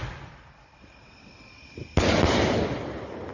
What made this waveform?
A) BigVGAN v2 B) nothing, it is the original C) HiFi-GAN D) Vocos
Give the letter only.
B